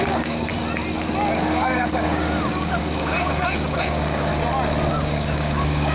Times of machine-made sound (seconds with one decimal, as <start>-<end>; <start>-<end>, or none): 0.0-0.5; 1.4-4.3; 4.9-5.9